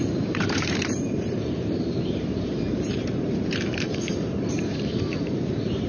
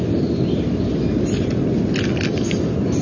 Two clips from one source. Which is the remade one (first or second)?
first